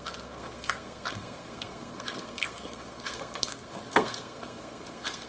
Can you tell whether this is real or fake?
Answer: fake